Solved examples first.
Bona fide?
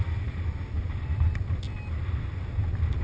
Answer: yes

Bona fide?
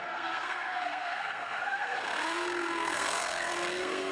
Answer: no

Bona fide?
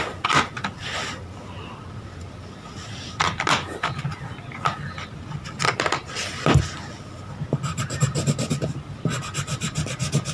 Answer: yes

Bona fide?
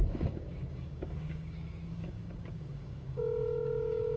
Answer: no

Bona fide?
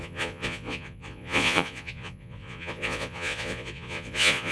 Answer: no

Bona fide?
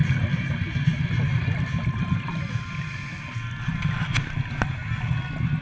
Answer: yes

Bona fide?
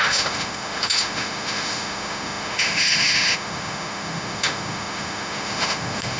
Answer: no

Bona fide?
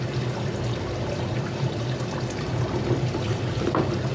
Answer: no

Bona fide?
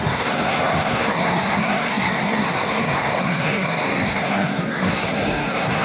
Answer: no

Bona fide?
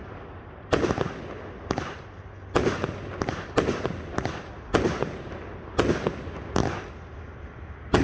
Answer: yes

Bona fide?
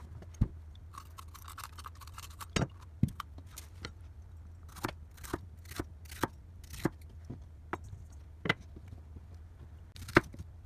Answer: yes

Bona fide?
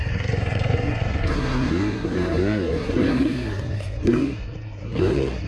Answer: no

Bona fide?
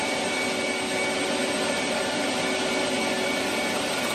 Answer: yes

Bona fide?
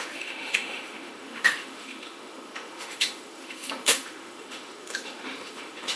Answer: no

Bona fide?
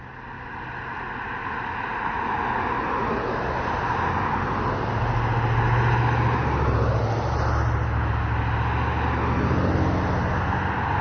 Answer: yes